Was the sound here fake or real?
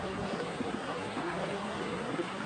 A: fake